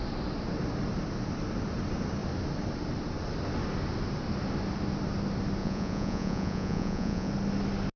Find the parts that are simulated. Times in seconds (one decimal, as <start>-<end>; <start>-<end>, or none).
5.6-7.3